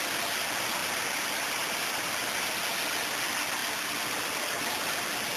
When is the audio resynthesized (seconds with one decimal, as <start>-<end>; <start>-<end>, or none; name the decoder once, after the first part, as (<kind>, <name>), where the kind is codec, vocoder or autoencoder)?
0.8-2.1 (vocoder, BigVGAN v2); 3.6-4.3